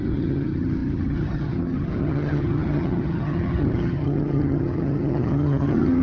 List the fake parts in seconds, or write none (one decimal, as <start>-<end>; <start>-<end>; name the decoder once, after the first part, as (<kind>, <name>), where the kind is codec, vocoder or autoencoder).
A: 0.0-6.0 (vocoder, HiFi-GAN)